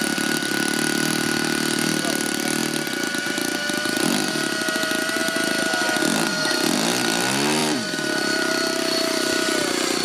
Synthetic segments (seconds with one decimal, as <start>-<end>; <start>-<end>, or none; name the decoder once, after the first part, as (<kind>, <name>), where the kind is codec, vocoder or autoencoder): 7.6-8.8 (vocoder, BigVGAN v2)